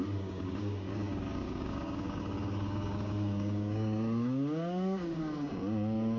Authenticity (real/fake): fake